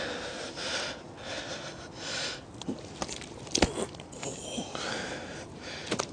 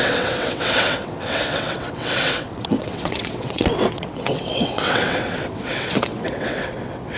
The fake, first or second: second